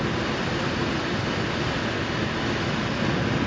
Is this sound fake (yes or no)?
no